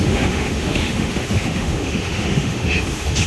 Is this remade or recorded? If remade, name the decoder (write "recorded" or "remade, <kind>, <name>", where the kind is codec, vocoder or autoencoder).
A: remade, autoencoder, DAC-VAE